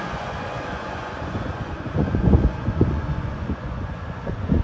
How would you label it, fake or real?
fake